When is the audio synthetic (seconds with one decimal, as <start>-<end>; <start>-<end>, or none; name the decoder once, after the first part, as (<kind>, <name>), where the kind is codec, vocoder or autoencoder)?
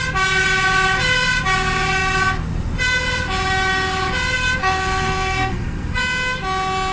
4.6-6.0 (codec, SNAC)